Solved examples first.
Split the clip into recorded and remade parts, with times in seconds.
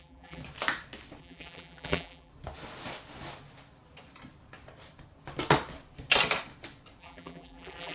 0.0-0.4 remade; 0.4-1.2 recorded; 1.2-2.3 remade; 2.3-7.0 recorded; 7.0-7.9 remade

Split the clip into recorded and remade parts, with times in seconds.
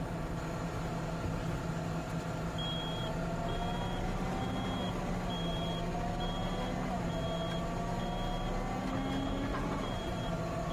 0.0-9.5 recorded; 9.5-10.2 remade; 10.2-10.7 recorded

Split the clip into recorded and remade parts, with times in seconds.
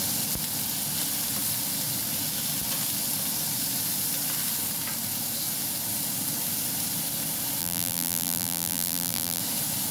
0.0-7.6 recorded; 7.6-9.4 remade; 9.4-9.9 recorded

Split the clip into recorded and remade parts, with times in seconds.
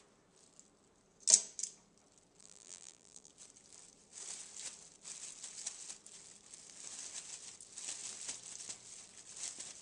0.0-2.4 recorded; 2.4-3.3 remade; 3.3-9.8 recorded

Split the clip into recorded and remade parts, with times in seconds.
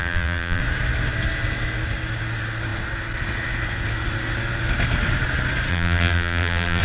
0.0-0.6 remade; 0.6-5.7 recorded; 5.7-6.8 remade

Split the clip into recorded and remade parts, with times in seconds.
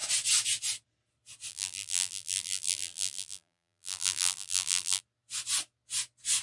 0.0-1.5 recorded; 1.5-5.0 remade; 5.0-6.4 recorded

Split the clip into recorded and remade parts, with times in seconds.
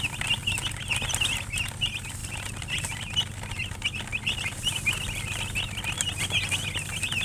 0.0-2.2 recorded; 2.2-3.1 remade; 3.1-7.2 recorded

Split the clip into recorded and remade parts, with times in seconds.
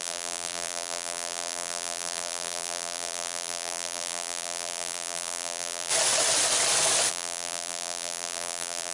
0.0-5.9 remade; 5.9-7.1 recorded; 7.1-8.9 remade